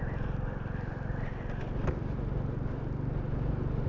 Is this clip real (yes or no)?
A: yes